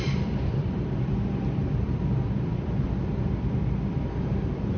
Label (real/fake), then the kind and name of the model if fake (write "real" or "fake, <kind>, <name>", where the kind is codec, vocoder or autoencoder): fake, vocoder, BigVGAN v2